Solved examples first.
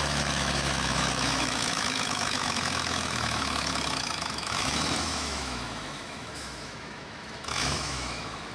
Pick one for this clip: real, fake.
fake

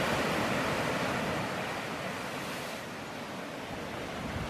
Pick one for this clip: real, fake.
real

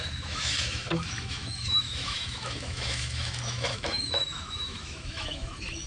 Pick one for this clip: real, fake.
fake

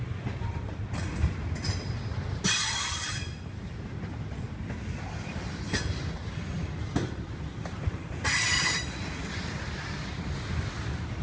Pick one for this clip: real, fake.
real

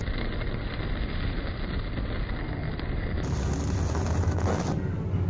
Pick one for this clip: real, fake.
real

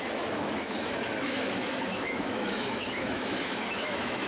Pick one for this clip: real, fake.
fake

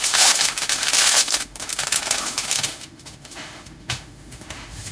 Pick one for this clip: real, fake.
fake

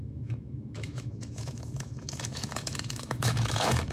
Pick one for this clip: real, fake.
fake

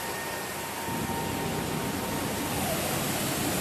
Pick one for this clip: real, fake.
real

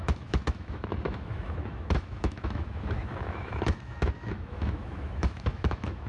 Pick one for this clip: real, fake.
fake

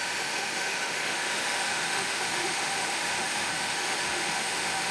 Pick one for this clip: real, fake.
fake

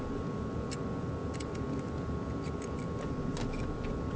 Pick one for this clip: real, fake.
real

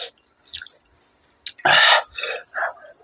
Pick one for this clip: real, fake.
real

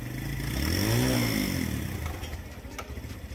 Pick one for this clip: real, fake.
real